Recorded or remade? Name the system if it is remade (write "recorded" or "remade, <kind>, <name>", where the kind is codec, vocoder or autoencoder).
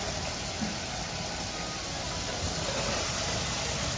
recorded